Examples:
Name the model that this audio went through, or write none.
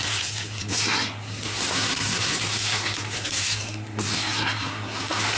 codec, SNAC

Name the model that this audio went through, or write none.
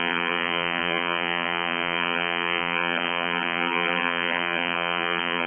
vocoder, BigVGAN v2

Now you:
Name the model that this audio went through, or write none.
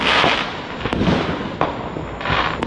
none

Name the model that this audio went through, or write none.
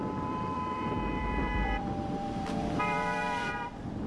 vocoder, BigVGAN v2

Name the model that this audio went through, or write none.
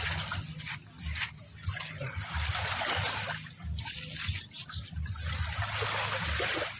none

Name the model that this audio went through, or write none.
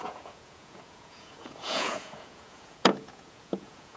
vocoder, Vocos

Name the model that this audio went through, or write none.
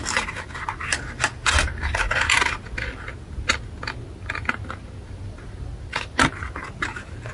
none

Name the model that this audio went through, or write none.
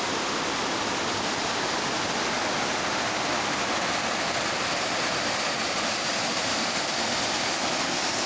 none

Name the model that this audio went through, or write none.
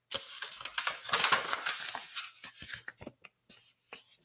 none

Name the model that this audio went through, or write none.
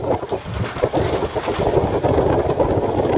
none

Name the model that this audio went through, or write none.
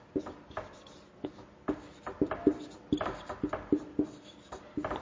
vocoder, BigVGAN v2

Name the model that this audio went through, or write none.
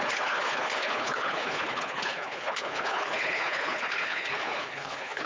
codec, HILCodec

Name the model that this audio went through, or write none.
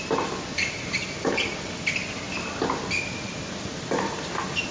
vocoder, BigVGAN v2